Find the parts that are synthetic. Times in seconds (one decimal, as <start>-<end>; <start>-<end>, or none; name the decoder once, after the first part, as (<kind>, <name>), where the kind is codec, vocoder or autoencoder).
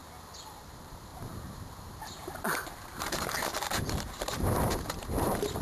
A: 0.5-5.6 (vocoder, BigVGAN v2)